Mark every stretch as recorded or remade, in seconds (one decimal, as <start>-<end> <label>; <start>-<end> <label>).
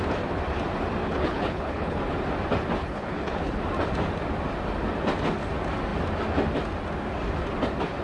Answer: 0.0-1.0 recorded; 1.0-2.0 remade; 2.0-2.8 recorded; 2.8-3.6 remade; 3.6-8.0 recorded